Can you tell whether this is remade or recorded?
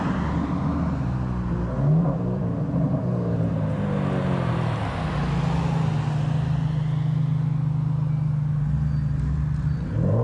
recorded